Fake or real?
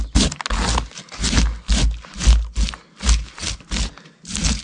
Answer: real